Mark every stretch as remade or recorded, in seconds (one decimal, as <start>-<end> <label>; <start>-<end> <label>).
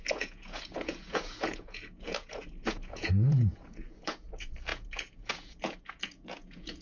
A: 0.0-6.8 remade